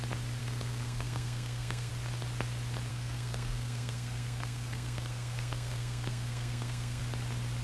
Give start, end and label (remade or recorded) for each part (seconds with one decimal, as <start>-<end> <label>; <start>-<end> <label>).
0.0-0.4 recorded; 0.4-1.9 remade; 1.9-2.9 recorded; 2.9-7.0 remade; 7.0-7.6 recorded